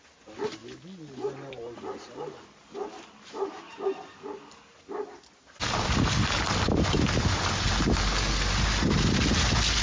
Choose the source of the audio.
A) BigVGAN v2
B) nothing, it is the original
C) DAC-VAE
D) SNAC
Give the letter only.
B